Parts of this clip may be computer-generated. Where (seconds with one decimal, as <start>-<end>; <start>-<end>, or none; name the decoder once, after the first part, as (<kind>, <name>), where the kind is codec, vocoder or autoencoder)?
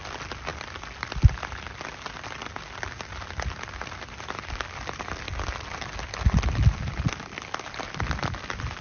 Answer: none